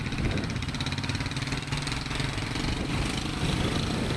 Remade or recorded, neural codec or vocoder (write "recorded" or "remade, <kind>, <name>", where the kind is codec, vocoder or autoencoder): recorded